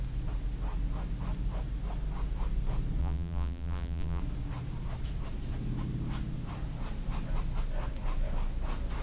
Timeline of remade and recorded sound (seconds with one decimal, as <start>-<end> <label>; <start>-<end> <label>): 0.0-3.0 recorded; 3.0-4.2 remade; 4.2-9.0 recorded